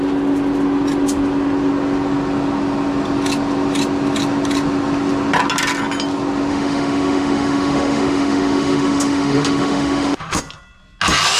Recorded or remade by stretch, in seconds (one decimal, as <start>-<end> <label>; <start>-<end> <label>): 0.0-6.5 recorded; 6.5-10.4 remade; 10.4-11.4 recorded